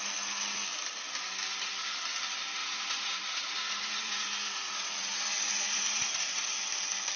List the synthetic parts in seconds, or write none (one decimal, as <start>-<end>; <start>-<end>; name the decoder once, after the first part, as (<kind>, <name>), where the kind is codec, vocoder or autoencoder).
2.6-6.6 (vocoder, Vocos)